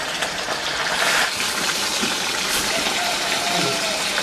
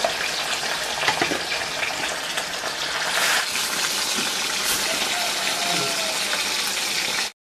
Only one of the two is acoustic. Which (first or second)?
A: second